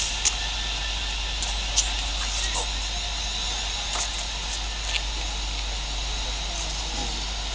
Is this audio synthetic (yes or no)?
no